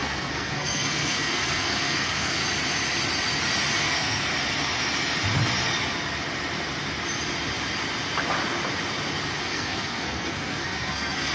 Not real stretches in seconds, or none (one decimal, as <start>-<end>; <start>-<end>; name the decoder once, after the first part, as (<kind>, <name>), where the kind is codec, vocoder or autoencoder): 0.0-2.4 (codec, SNAC); 3.8-4.3; 9.4-11.3